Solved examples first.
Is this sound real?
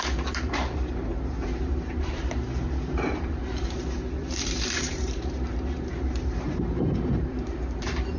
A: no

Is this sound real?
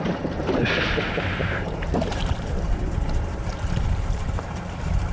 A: no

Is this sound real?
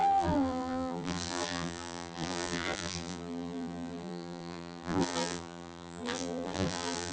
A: no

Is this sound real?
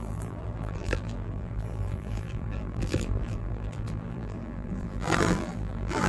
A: no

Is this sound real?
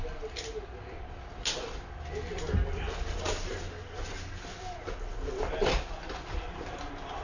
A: yes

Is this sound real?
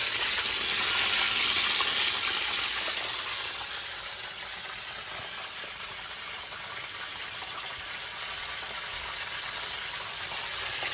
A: yes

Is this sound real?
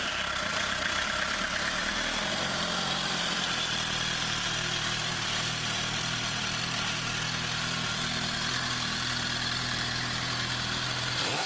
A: no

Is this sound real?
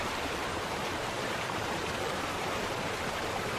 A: no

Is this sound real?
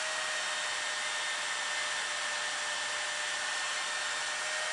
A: yes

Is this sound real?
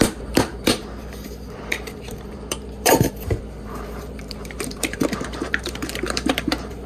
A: no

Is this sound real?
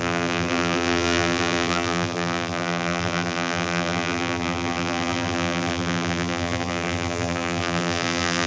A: no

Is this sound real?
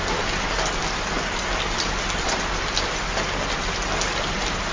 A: yes